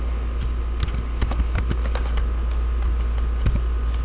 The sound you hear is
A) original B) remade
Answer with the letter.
A